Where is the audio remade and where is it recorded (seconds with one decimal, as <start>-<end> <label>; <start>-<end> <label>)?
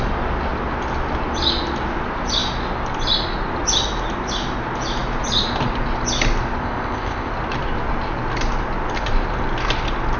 0.0-6.6 recorded; 6.6-7.3 remade; 7.3-10.2 recorded